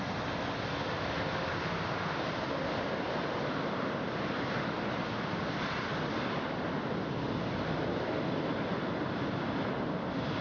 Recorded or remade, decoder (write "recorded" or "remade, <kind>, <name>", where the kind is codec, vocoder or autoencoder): recorded